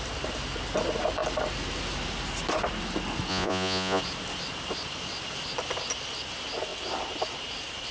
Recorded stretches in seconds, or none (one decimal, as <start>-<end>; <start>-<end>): 0.0-3.3; 4.0-7.9